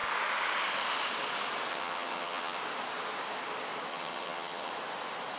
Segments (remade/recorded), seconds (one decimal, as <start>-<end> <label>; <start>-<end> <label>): 0.0-1.7 recorded; 1.7-2.6 remade; 2.6-3.9 recorded; 3.9-4.7 remade; 4.7-5.4 recorded